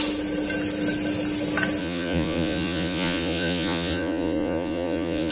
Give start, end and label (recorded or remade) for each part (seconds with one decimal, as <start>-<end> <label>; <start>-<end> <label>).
0.0-1.8 recorded; 1.8-5.3 remade